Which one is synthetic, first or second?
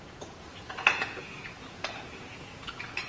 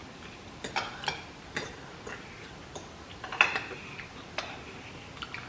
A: first